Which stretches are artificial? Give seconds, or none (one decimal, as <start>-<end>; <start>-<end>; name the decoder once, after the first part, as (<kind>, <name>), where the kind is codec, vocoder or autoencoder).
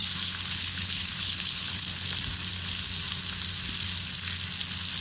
0.0-1.8 (codec, HILCodec)